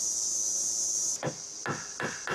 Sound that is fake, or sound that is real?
real